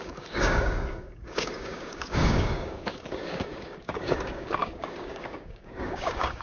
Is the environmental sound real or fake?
fake